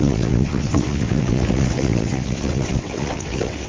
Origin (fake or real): fake